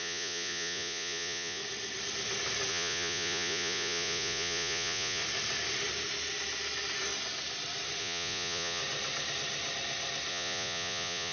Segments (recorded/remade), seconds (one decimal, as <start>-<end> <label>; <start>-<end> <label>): 0.0-1.6 remade; 1.6-2.7 recorded; 2.7-5.2 remade; 5.2-8.0 recorded; 8.0-8.8 remade; 8.8-10.3 recorded; 10.3-11.3 remade